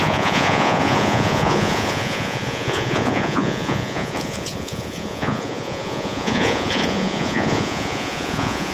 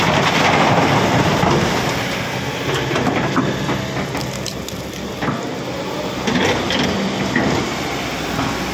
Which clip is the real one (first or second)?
second